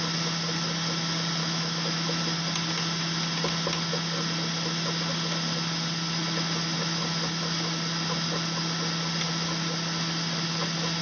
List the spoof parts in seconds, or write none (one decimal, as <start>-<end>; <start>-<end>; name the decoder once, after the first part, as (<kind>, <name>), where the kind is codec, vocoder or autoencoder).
1.4-2.2 (autoencoder, DAC-VAE)

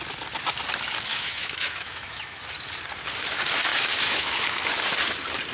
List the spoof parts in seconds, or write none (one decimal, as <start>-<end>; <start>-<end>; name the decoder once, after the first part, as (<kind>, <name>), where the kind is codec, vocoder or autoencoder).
1.1-2.4 (autoencoder, DAC-VAE); 3.7-4.3

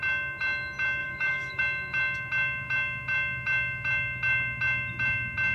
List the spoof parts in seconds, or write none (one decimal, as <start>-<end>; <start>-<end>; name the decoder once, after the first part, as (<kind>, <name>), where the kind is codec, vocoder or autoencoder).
1.0-1.6 (autoencoder, DAC-VAE)

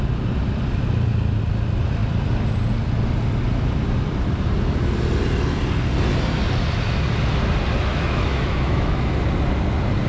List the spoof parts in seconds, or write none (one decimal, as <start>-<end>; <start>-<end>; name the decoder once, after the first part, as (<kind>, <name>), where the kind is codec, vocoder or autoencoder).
7.9-9.1 (autoencoder, DAC-VAE)

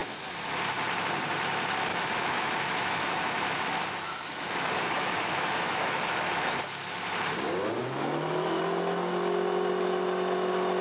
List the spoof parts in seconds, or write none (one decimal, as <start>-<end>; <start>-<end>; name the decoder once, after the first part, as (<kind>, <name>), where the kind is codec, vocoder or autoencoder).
0.0-0.6 (autoencoder, DAC-VAE); 1.9-6.6; 7.8-8.6